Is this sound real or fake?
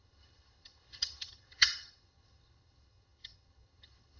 fake